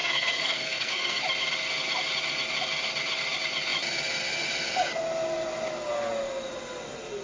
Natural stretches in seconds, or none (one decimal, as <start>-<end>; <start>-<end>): 1.2-7.2